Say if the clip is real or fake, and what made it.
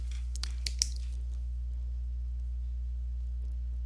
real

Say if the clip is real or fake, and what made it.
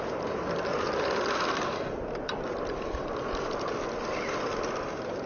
real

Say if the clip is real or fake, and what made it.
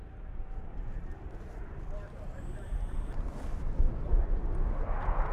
real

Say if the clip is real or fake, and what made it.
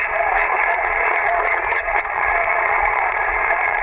fake, vocoder, Vocos